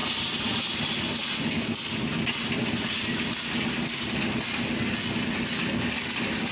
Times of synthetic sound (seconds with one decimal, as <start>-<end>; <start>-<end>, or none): none